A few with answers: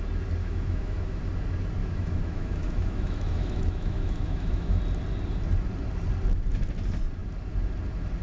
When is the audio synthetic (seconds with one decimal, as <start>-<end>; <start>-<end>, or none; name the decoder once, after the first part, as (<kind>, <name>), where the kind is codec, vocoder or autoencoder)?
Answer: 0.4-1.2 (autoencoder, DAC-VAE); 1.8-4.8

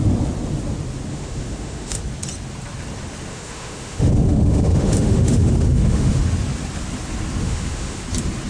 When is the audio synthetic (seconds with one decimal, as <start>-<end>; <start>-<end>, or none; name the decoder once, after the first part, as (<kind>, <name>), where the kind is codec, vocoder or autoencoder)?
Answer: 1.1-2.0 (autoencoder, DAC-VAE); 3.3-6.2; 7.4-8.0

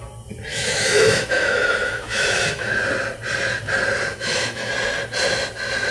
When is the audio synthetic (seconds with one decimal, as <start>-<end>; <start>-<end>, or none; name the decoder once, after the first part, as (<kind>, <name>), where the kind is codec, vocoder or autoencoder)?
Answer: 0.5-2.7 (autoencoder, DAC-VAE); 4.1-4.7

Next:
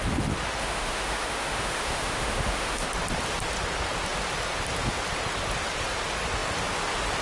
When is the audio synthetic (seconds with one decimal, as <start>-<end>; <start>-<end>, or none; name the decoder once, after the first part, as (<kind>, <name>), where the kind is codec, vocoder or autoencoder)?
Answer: 0.6-2.9 (autoencoder, DAC-VAE)

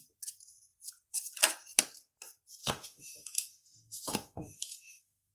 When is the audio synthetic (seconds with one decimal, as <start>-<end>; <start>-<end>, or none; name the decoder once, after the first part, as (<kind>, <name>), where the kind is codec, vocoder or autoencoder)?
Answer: 2.6-5.3 (autoencoder, DAC-VAE)

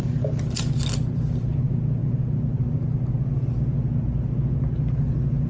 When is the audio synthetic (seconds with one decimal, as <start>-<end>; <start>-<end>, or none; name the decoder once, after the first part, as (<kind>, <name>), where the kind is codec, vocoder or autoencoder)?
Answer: none